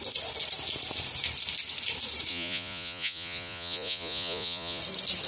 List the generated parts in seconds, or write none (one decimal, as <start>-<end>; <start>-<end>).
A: 2.3-4.8